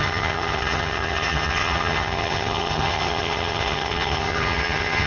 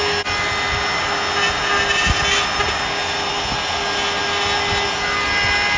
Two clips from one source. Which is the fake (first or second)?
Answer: first